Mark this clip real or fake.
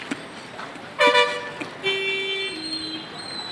real